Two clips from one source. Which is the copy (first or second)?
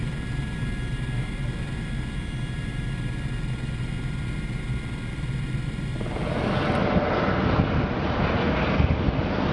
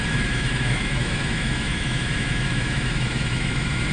second